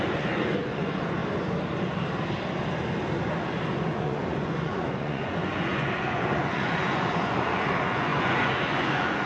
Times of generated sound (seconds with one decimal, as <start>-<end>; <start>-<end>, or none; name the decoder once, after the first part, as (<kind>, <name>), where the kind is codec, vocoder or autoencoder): 0.0-1.2 (vocoder, Vocos); 3.7-9.3